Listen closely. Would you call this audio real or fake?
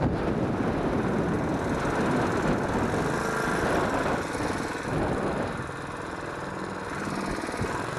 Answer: real